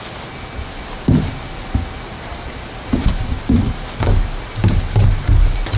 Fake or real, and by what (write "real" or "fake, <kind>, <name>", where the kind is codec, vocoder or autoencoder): real